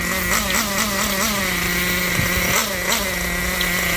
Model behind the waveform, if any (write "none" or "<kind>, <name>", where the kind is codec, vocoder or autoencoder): none